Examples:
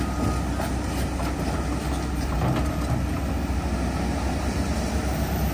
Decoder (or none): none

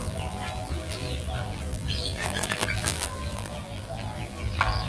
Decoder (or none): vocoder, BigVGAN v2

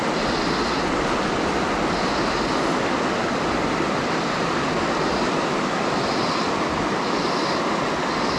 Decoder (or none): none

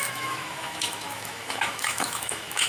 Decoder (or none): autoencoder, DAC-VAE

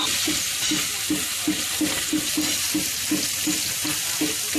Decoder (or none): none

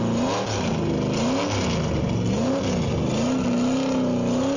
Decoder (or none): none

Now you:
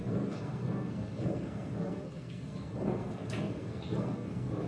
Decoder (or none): codec, SNAC